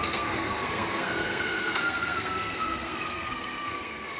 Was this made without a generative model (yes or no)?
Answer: no